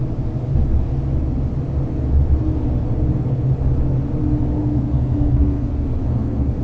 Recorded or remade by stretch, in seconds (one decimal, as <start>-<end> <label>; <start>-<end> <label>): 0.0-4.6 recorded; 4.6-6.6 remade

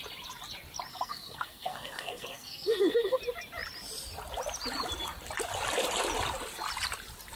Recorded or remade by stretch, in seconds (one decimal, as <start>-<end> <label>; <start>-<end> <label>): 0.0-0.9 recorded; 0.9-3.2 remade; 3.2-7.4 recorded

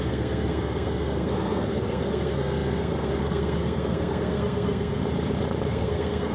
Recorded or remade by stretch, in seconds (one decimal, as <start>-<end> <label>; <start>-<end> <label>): 0.0-5.0 remade; 5.0-5.7 recorded; 5.7-6.3 remade